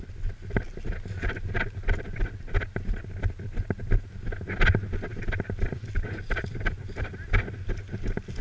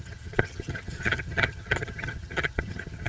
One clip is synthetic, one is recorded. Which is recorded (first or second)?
first